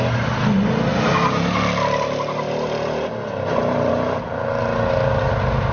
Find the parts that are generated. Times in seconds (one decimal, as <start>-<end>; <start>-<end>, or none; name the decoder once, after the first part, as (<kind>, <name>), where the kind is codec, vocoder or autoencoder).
none